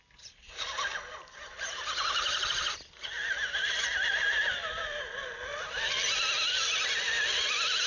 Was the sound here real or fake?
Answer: real